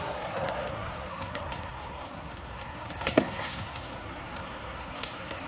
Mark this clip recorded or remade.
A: remade